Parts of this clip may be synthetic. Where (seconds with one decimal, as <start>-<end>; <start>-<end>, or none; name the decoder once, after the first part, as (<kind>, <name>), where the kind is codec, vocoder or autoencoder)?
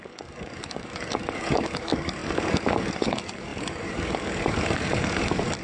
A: 0.0-5.6 (codec, DAC)